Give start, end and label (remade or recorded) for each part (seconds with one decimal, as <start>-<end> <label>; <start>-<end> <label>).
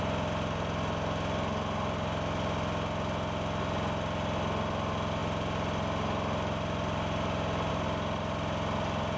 0.0-9.2 recorded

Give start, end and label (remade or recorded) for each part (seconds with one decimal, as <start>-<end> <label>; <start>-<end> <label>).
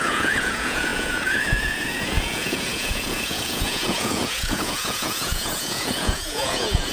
0.0-6.9 remade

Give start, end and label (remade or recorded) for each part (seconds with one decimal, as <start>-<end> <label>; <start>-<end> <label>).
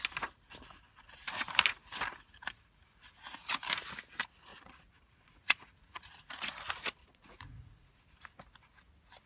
0.0-4.5 recorded; 4.5-6.4 remade; 6.4-7.0 recorded; 7.0-8.0 remade; 8.0-9.3 recorded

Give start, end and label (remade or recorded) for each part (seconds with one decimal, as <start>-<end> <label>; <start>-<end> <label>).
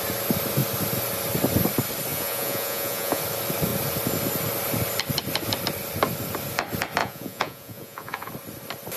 0.0-2.1 recorded; 2.1-3.2 remade; 3.2-7.0 recorded; 7.0-8.3 remade; 8.3-9.0 recorded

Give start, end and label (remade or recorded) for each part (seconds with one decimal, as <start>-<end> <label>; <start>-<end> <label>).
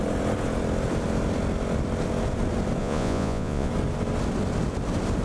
0.0-2.8 recorded; 2.8-3.7 remade; 3.7-5.2 recorded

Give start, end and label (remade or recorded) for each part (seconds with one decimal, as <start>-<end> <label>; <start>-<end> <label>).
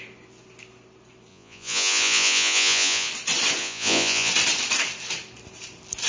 0.0-1.3 recorded; 1.3-3.1 remade; 3.1-3.6 recorded; 3.6-4.3 remade; 4.3-6.1 recorded